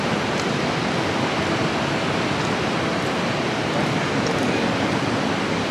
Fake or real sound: real